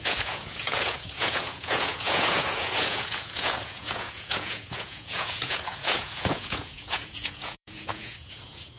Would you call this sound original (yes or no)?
no